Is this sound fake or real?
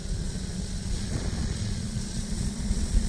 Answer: fake